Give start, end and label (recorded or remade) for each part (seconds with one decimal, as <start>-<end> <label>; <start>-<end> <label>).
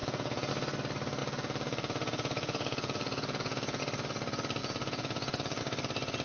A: 0.0-0.5 remade; 0.5-1.2 recorded; 1.2-3.8 remade; 3.8-4.6 recorded; 4.6-5.6 remade; 5.6-6.2 recorded